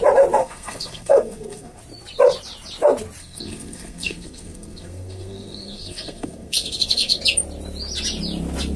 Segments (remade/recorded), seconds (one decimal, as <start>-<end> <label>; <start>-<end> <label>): 0.0-0.4 recorded; 0.4-1.8 remade; 1.8-3.2 recorded; 3.2-7.2 remade; 7.2-8.8 recorded